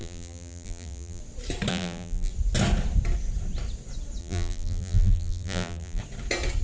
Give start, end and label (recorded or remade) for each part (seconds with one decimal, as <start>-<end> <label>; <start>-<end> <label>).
0.0-1.2 remade; 1.2-1.7 recorded; 1.7-2.3 remade; 2.3-4.2 recorded; 4.2-6.0 remade; 6.0-6.6 recorded